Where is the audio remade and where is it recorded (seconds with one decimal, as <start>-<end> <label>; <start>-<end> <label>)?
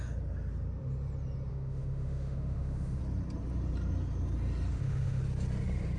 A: 0.0-1.5 recorded; 1.5-3.0 remade; 3.0-4.7 recorded; 4.7-5.2 remade; 5.2-6.0 recorded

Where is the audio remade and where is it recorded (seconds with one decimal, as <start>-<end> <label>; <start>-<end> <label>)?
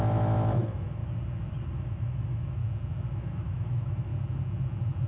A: 0.0-1.0 remade; 1.0-1.7 recorded; 1.7-2.6 remade; 2.6-3.1 recorded; 3.1-4.1 remade; 4.1-5.1 recorded